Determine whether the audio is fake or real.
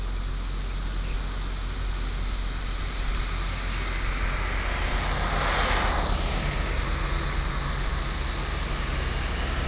real